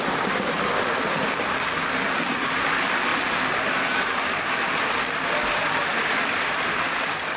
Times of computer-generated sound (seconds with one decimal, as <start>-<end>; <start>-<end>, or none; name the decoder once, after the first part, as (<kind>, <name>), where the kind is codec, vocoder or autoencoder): none